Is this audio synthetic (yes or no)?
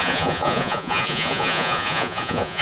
yes